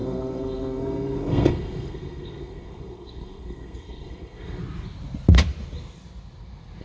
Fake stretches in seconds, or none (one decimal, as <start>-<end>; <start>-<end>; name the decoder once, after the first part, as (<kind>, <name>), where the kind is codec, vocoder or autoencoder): 0.0-4.6 (codec, SNAC)